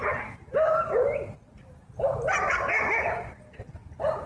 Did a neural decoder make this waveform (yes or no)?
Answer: no